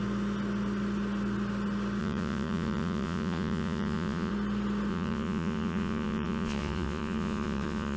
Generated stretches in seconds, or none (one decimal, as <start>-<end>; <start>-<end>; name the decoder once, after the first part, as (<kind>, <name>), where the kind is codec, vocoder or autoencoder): 2.0-4.3 (vocoder, Vocos); 4.9-8.0